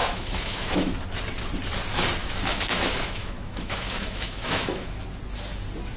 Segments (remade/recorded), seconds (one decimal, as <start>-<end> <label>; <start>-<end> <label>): 0.0-0.9 remade; 0.9-2.2 recorded; 2.2-5.0 remade; 5.0-6.0 recorded